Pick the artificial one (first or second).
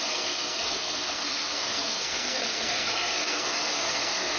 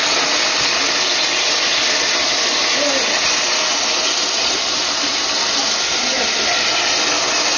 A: first